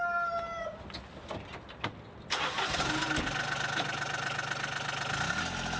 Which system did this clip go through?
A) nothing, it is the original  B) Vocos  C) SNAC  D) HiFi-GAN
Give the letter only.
A